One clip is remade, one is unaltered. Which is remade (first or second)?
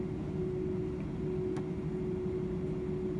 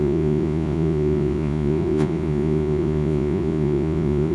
second